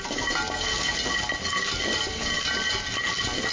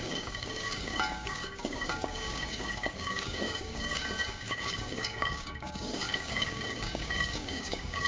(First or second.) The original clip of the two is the first